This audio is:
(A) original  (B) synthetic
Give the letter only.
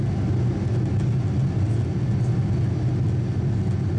A